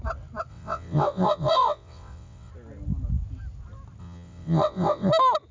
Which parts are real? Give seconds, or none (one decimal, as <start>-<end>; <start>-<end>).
0.0-0.5; 2.5-4.0; 5.1-5.5